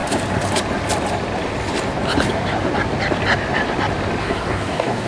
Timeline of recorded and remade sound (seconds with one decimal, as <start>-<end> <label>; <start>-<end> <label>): 0.0-4.2 recorded; 4.2-5.1 remade